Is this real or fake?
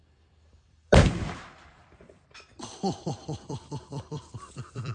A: fake